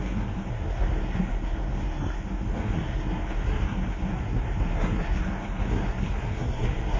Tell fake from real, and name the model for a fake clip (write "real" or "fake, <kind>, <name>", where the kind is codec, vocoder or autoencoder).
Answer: fake, codec, SNAC